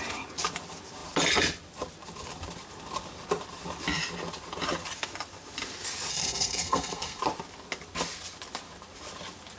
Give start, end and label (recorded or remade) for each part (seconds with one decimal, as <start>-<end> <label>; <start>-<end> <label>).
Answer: 0.0-6.1 recorded; 6.1-7.2 remade; 7.2-9.6 recorded

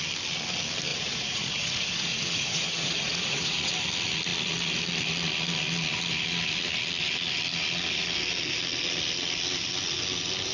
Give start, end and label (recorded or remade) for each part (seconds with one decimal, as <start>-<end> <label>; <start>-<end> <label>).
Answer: 0.0-0.9 recorded; 0.9-3.7 remade; 3.7-10.5 recorded

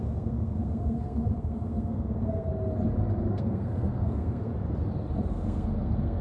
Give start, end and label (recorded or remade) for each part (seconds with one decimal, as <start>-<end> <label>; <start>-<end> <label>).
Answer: 0.0-2.5 remade; 2.5-3.3 recorded; 3.3-4.5 remade; 4.5-5.3 recorded; 5.3-6.2 remade

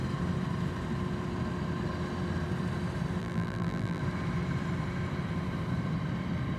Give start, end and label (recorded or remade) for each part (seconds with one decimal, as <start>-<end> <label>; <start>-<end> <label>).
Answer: 0.0-3.2 recorded; 3.2-4.0 remade; 4.0-6.6 recorded

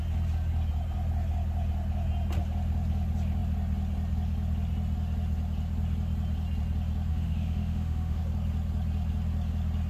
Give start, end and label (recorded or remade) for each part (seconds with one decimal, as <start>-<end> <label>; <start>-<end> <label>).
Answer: 0.0-7.1 recorded; 7.1-8.2 remade; 8.2-9.9 recorded

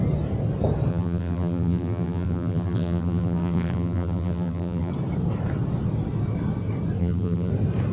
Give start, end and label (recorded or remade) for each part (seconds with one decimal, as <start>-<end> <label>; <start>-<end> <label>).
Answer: 0.0-0.9 recorded; 0.9-4.9 remade; 4.9-7.0 recorded; 7.0-7.5 remade; 7.5-7.9 recorded

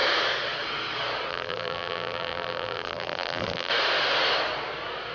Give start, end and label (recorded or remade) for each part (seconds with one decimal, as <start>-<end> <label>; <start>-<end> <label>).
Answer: 0.0-1.3 recorded; 1.3-3.7 remade; 3.7-5.1 recorded